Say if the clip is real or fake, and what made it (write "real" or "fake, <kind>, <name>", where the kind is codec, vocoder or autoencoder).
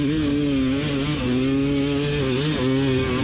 real